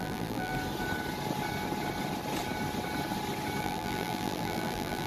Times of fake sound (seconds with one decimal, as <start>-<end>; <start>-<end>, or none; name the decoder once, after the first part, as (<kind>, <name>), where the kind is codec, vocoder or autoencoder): 0.0-0.5 (vocoder, BigVGAN v2); 3.6-5.1